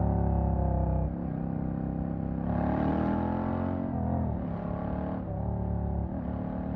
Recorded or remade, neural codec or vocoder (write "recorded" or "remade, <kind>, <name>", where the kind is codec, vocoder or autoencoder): recorded